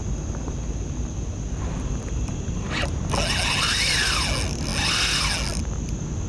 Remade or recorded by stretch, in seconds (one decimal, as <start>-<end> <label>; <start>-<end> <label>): 0.0-6.3 recorded